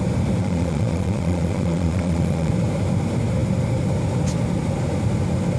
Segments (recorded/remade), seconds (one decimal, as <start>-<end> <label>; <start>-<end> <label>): 0.0-0.4 recorded; 0.4-2.5 remade; 2.5-5.6 recorded